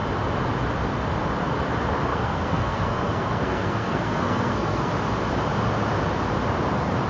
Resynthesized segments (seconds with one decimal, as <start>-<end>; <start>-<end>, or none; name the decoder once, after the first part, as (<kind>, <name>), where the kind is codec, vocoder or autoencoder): 2.1-4.9 (codec, SNAC)